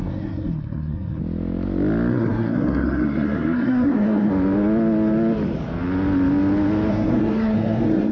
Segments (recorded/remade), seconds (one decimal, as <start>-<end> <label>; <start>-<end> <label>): 0.0-1.2 remade; 1.2-2.1 recorded; 2.1-4.3 remade; 4.3-6.9 recorded; 6.9-8.1 remade